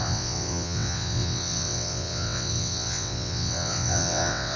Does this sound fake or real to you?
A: fake